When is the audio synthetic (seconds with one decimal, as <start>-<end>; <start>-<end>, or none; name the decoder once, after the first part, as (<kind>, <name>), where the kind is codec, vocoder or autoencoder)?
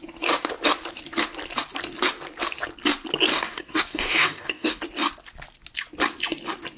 3.3-4.8 (codec, DAC)